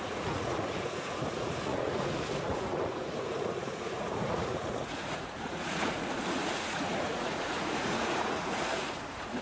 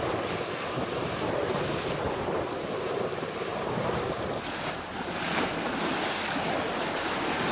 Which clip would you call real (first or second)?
second